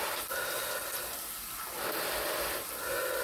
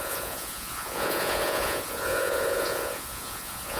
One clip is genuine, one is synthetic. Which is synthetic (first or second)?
second